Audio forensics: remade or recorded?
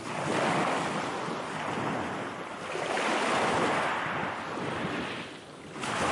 recorded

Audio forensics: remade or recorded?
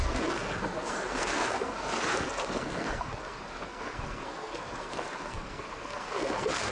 remade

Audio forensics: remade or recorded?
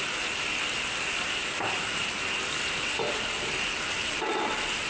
recorded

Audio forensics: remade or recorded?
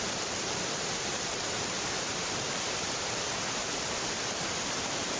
remade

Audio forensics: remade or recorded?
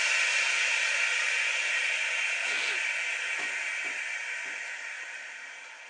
recorded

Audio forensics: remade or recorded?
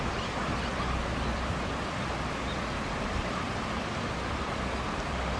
remade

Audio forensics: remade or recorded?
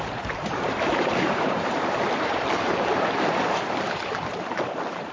remade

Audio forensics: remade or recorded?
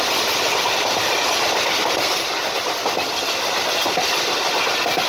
recorded